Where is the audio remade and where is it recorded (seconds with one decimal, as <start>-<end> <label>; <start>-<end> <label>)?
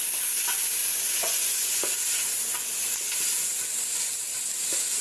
0.0-0.8 recorded; 0.8-1.8 remade; 1.8-5.0 recorded